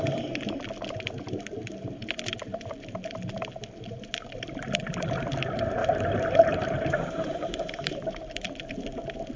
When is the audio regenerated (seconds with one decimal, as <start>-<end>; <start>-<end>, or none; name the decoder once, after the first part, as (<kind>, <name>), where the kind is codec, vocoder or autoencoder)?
5.8-8.4 (vocoder, BigVGAN v2)